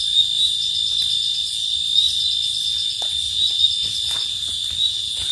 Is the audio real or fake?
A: real